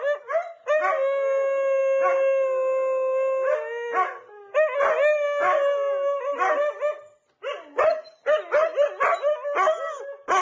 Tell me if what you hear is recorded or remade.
recorded